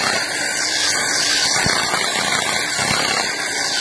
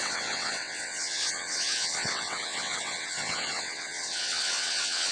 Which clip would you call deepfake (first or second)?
second